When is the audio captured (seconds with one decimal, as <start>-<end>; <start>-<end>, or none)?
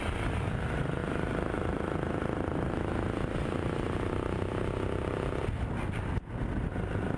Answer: 0.0-7.2